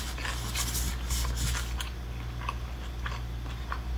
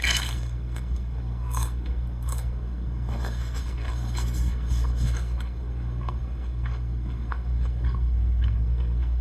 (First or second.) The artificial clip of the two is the second